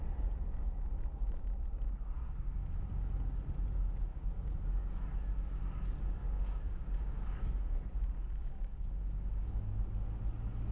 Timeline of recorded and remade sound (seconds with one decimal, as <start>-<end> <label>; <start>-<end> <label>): 0.0-4.1 recorded; 4.1-4.9 remade; 4.9-6.2 recorded; 6.2-7.4 remade; 7.4-8.4 recorded; 8.4-10.2 remade; 10.2-10.7 recorded